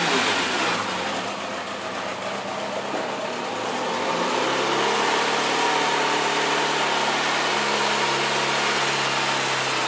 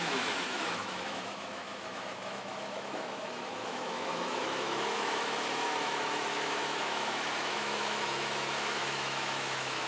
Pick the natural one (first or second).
first